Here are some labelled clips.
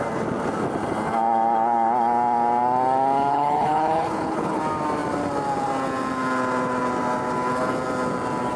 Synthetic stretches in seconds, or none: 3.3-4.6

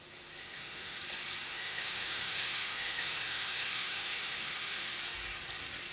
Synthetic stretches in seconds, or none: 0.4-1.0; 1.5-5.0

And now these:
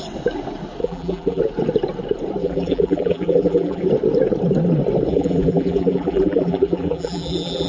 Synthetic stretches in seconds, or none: 0.8-1.4; 2.4-3.9; 5.1-7.7

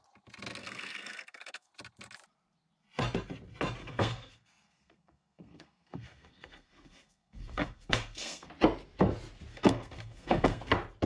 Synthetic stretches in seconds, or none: 0.6-1.7; 3.8-8.5; 9.5-10.7

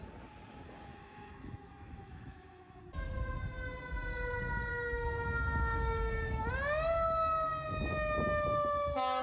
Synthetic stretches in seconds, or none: 0.9-2.8; 4.7-6.5